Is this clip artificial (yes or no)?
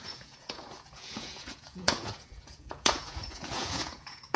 yes